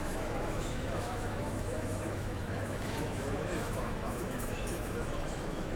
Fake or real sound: fake